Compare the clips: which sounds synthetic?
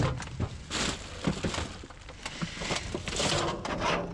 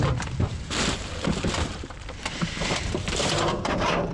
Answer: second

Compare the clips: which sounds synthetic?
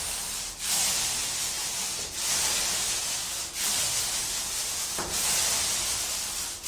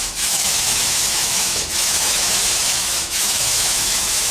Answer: second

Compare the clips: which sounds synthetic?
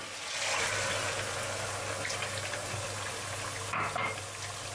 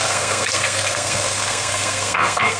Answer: second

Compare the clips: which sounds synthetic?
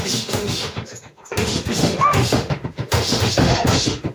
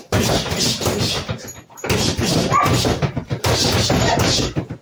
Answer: first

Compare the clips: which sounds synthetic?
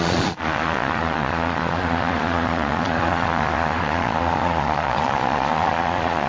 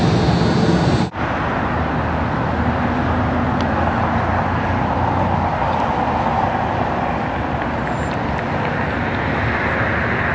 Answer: first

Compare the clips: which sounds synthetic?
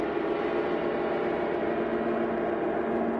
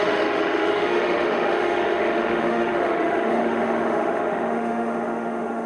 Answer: second